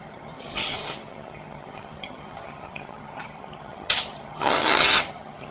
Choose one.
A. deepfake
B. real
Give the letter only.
A